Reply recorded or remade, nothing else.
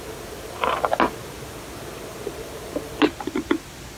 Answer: recorded